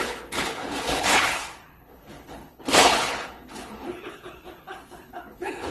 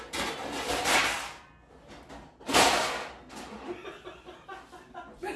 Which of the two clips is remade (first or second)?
first